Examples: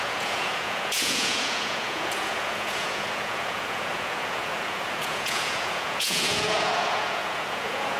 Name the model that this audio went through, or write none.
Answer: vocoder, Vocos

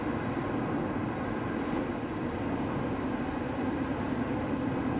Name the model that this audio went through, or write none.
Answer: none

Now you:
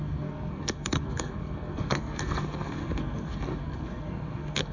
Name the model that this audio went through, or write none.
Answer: codec, SNAC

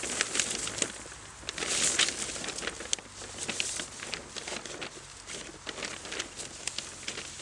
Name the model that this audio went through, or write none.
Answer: none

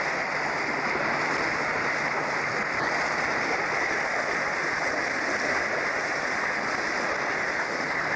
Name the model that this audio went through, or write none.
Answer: none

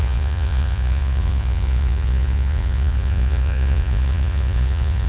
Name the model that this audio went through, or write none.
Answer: vocoder, Vocos